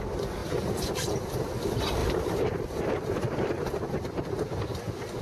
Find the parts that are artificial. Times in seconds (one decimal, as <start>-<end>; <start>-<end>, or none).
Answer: 0.4-1.6; 2.0-5.2